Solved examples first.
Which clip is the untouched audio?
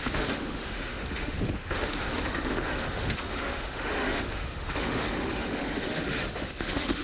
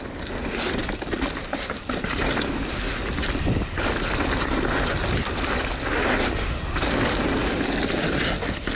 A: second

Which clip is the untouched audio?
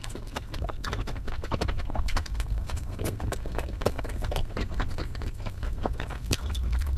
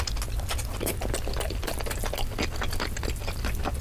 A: second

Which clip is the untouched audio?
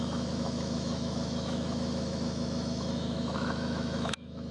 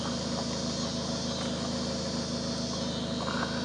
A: second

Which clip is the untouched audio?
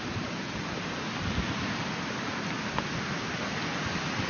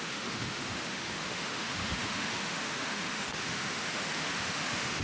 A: first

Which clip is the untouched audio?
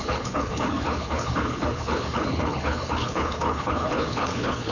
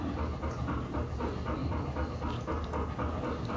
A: second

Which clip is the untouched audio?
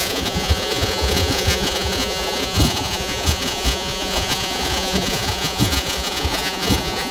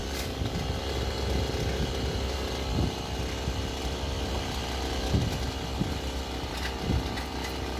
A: second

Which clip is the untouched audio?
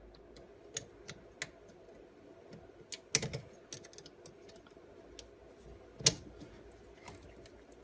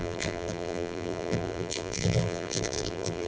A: first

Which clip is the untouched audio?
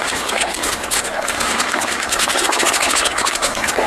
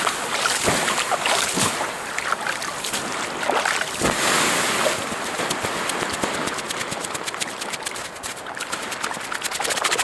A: second